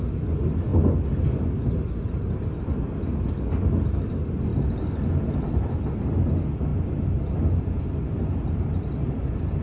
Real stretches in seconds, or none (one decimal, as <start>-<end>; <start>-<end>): 0.0-9.6